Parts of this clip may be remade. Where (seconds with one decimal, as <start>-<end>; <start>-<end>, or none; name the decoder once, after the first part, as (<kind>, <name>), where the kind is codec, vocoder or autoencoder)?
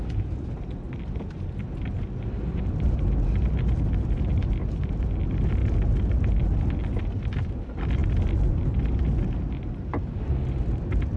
none